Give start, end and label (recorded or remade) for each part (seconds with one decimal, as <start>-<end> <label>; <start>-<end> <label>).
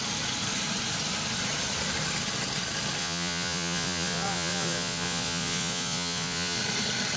0.0-3.0 recorded; 3.0-6.6 remade; 6.6-7.2 recorded